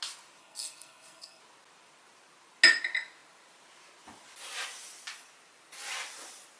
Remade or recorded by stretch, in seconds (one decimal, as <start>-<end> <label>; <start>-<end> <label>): 0.0-0.4 recorded; 0.4-1.4 remade; 1.4-6.6 recorded